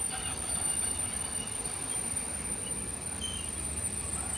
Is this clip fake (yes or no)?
no